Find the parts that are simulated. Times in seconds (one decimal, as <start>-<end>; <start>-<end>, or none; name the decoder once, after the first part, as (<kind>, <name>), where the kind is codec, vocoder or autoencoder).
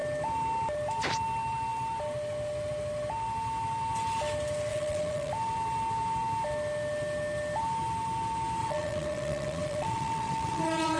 4.7-5.3 (vocoder, WaveNeXt); 8.6-11.0